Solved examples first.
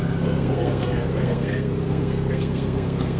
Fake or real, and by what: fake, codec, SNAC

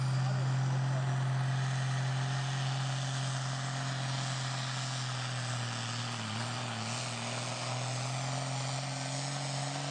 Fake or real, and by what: real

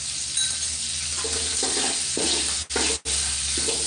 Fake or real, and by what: real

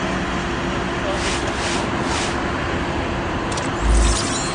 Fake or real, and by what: real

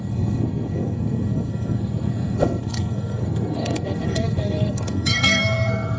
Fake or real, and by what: fake, codec, SNAC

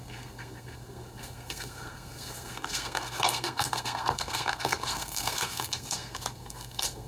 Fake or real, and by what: fake, codec, SNAC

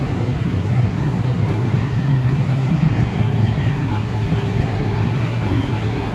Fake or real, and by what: fake, codec, SNAC